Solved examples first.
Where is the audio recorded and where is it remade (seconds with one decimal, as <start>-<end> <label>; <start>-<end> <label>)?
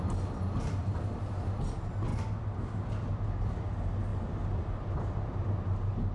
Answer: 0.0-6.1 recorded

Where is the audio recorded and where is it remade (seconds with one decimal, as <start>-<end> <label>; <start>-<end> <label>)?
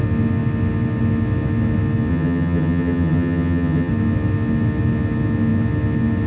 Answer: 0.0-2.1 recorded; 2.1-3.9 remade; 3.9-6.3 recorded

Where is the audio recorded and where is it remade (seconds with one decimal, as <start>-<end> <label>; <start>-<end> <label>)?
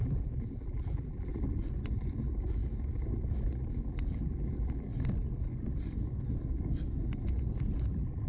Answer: 0.0-1.3 remade; 1.3-2.2 recorded; 2.2-2.6 remade; 2.6-3.7 recorded; 3.7-4.9 remade; 4.9-7.9 recorded; 7.9-8.3 remade